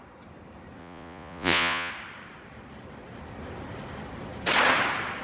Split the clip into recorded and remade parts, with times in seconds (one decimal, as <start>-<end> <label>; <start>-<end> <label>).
0.0-0.8 recorded; 0.8-1.9 remade; 1.9-5.2 recorded